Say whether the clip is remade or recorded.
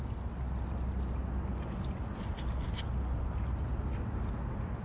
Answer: recorded